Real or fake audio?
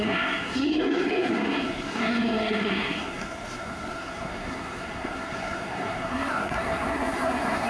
fake